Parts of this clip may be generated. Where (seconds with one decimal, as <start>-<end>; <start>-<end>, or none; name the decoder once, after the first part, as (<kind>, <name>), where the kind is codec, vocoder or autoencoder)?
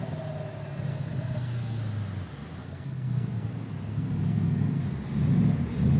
0.9-1.8 (codec, SNAC); 2.6-3.5; 3.9-4.8